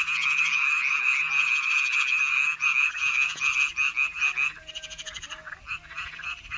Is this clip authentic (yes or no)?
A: yes